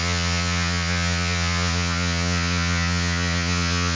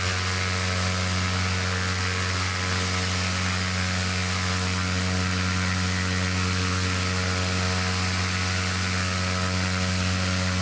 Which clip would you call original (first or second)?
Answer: second